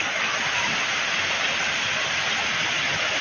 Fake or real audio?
real